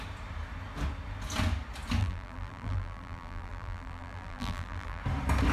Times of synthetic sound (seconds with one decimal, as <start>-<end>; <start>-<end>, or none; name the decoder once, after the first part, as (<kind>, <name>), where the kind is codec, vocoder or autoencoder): 2.0-5.0 (vocoder, BigVGAN v2)